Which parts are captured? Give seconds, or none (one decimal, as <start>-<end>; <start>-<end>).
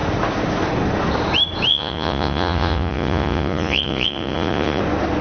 0.0-1.7; 4.8-5.2